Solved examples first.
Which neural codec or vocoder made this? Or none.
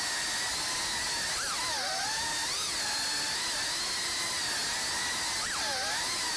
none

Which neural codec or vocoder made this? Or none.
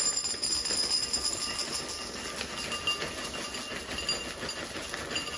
none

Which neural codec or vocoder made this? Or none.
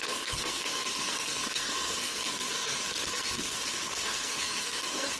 codec, SNAC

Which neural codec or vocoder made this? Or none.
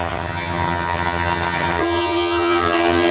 vocoder, HiFi-GAN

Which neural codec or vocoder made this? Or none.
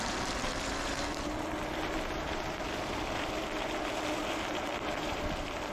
vocoder, BigVGAN v2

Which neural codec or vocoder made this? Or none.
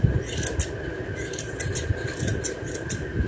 none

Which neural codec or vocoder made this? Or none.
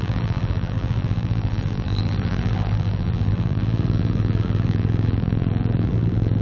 vocoder, BigVGAN v2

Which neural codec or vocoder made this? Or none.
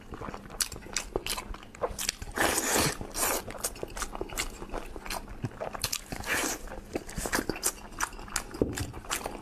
none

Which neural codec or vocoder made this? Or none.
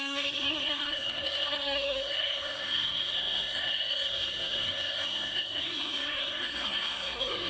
codec, SNAC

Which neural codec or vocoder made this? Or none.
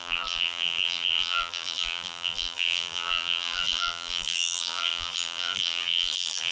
vocoder, BigVGAN v2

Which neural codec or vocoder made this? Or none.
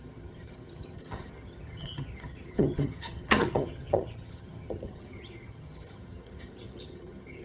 vocoder, HiFi-GAN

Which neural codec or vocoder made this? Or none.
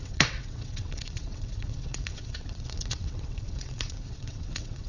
vocoder, WaveNeXt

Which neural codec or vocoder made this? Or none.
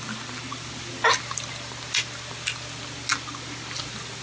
none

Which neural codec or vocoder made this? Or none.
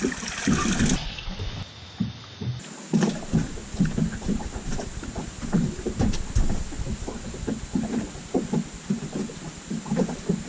none